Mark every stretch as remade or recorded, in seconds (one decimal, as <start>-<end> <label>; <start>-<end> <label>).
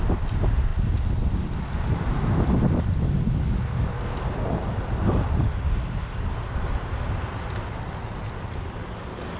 0.0-9.4 recorded